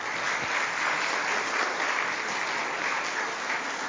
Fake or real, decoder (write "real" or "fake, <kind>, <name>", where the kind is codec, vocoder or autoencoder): real